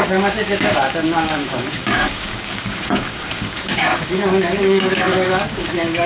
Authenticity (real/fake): fake